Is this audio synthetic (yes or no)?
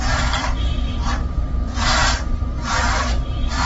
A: yes